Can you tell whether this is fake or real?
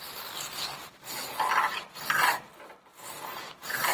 real